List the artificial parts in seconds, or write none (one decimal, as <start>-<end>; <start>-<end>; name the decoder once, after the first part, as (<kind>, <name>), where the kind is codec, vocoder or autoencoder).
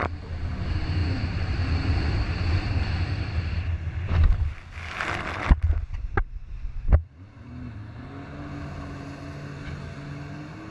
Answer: 1.0-3.8 (vocoder, BigVGAN v2)